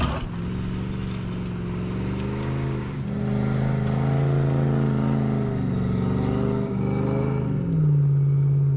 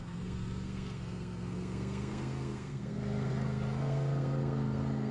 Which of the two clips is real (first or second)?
first